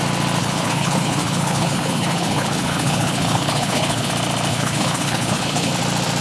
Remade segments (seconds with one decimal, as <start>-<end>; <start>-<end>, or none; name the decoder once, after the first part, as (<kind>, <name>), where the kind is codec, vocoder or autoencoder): 0.4-4.1 (codec, HILCodec); 4.5-5.7